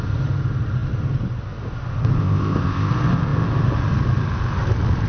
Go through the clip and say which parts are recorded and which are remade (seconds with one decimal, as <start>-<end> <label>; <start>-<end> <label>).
0.0-2.2 recorded; 2.2-2.9 remade; 2.9-5.1 recorded